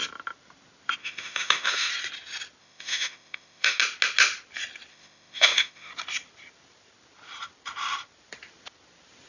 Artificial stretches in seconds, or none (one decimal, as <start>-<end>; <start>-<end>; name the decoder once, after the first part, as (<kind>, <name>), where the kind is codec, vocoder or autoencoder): 1.0-1.9 (autoencoder, DAC-VAE); 2.6-3.8; 4.9-5.9